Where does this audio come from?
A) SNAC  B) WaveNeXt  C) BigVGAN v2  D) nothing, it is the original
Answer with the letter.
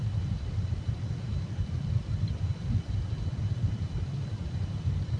D